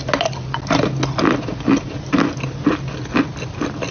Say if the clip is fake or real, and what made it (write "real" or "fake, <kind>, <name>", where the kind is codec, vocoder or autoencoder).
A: real